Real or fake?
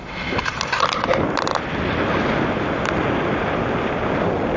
real